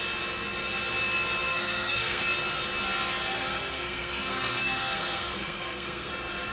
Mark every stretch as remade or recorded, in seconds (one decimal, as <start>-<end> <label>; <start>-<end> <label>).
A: 0.0-1.5 recorded; 1.5-2.2 remade; 2.2-3.3 recorded; 3.3-6.1 remade; 6.1-6.5 recorded